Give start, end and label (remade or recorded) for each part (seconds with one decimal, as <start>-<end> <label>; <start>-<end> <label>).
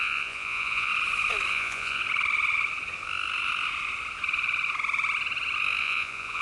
0.0-0.9 remade; 0.9-1.5 recorded; 1.5-2.0 remade; 2.0-5.8 recorded; 5.8-6.4 remade